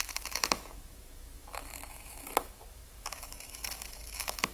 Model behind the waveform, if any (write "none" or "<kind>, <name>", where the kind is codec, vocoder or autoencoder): autoencoder, DAC-VAE